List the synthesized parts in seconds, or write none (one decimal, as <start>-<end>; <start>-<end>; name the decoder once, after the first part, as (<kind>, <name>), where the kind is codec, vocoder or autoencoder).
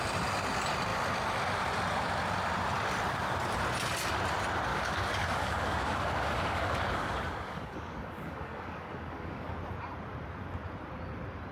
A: 4.7-9.6 (codec, DAC)